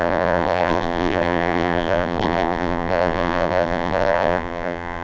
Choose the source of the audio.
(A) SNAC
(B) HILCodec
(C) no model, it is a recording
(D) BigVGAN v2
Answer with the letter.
D